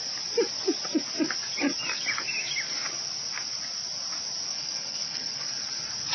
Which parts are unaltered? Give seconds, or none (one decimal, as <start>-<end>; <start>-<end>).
0.0-4.5; 5.4-6.1

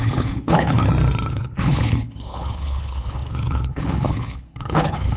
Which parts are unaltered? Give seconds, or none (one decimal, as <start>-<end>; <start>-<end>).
0.8-1.3

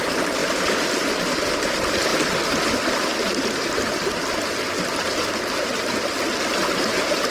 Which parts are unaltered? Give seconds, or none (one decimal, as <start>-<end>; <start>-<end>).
0.0-7.3

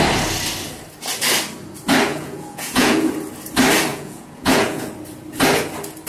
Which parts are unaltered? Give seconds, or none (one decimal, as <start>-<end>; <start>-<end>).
0.0-2.1; 3.1-3.9; 4.9-6.1

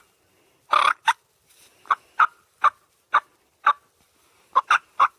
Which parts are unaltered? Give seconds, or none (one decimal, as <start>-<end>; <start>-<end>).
0.0-5.2

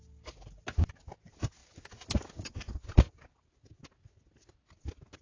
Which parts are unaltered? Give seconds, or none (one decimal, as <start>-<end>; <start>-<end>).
0.0-5.2

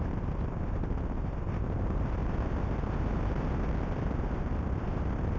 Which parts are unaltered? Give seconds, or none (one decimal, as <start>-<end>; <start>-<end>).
2.2-5.4